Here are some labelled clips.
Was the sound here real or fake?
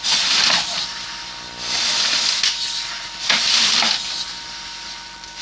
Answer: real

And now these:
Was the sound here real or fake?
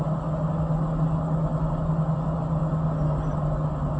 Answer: real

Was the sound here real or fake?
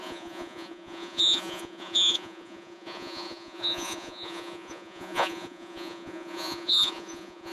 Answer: fake